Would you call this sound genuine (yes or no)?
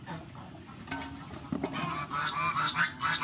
yes